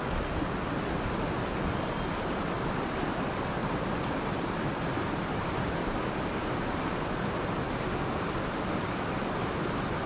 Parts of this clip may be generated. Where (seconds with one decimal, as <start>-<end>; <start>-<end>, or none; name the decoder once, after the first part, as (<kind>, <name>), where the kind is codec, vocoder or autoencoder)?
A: 3.6-7.0 (vocoder, BigVGAN v2)